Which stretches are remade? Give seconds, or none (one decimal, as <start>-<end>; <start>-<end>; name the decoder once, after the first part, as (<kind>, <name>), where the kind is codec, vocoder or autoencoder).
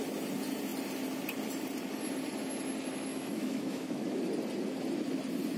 3.1-4.2 (autoencoder, DAC-VAE)